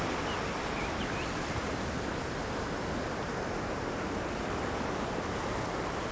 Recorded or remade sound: recorded